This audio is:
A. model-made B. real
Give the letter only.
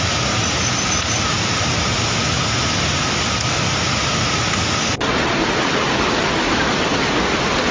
B